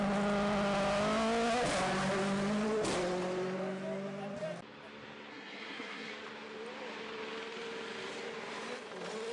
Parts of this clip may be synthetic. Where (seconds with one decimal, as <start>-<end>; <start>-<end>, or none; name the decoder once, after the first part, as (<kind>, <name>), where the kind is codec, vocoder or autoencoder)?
5.3-6.1 (codec, SNAC)